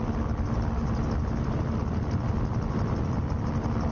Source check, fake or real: real